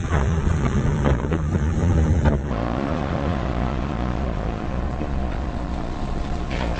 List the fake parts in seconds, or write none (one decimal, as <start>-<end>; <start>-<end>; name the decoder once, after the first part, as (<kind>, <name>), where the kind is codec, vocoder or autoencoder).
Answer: 0.0-6.8 (vocoder, Vocos)